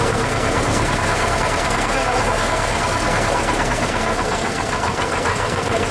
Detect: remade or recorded remade